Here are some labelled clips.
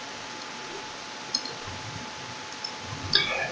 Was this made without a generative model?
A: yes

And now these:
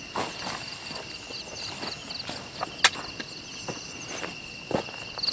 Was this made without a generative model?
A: yes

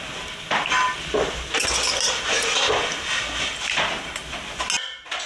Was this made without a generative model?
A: yes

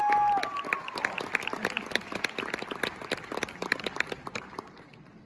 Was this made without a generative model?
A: yes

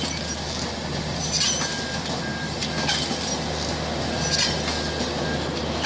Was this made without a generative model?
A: yes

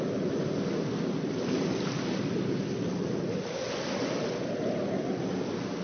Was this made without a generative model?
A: yes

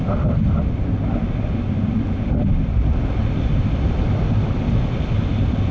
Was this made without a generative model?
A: yes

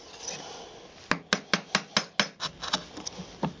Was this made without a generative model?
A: yes